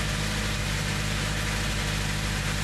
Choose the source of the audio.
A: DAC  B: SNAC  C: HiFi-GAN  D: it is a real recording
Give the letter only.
D